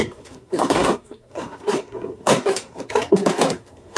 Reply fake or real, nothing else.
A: fake